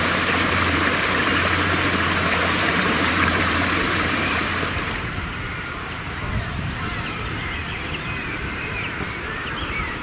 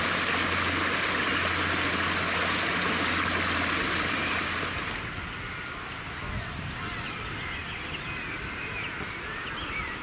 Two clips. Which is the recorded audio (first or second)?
second